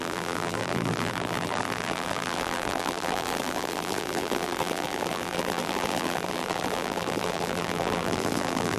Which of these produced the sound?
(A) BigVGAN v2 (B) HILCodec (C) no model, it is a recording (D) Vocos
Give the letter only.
A